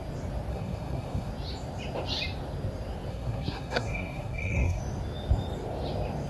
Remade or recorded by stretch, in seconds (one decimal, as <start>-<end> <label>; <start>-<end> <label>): 0.0-0.5 recorded; 0.5-1.3 remade; 1.3-3.1 recorded; 3.1-4.8 remade; 4.8-6.3 recorded